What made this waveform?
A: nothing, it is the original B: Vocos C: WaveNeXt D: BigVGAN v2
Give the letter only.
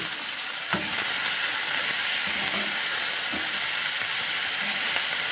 D